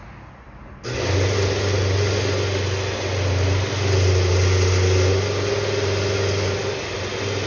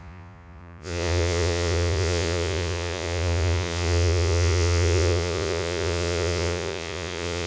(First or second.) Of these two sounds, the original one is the first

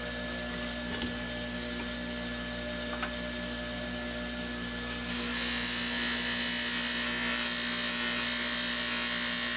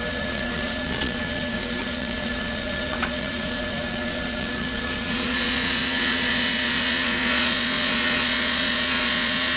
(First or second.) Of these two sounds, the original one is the first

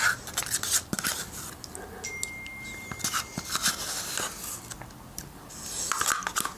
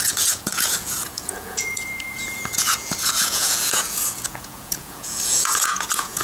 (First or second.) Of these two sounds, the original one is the first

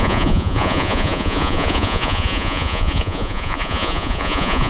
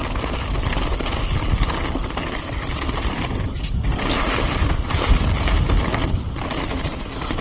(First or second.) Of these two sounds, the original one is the second